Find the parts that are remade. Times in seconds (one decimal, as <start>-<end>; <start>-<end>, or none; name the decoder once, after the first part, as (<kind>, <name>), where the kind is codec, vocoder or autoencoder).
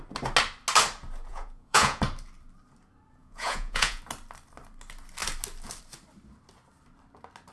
1.3-2.0 (vocoder, Vocos); 3.2-4.0